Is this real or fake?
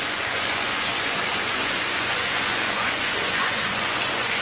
fake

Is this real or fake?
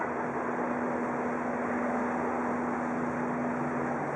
real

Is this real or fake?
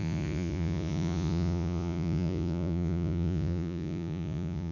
fake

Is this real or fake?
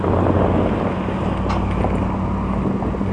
real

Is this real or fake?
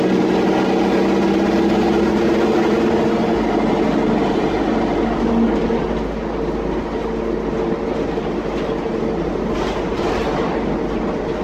real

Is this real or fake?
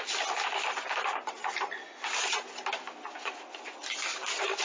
real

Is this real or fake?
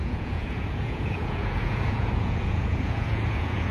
fake